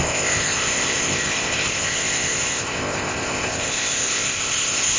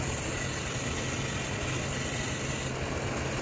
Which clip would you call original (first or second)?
second